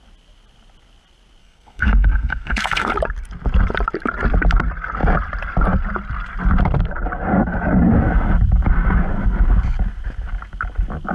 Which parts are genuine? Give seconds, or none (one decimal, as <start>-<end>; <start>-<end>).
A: 0.0-1.4; 2.9-11.1